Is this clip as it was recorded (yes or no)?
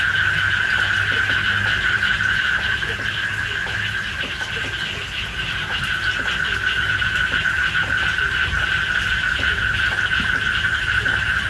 yes